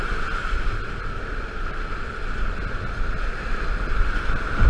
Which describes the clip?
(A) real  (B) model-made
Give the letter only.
A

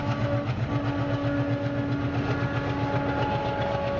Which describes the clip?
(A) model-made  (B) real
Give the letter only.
B